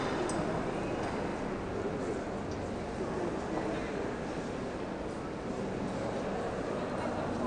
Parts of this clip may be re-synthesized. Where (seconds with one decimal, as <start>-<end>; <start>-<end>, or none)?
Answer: none

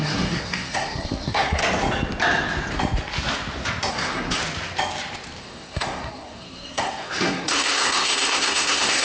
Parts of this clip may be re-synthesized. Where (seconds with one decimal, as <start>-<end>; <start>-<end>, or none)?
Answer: 0.0-1.6; 3.9-4.4; 5.4-9.0

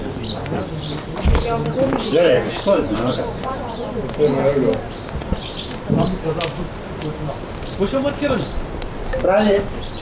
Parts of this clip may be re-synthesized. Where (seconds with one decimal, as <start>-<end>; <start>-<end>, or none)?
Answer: 2.0-3.9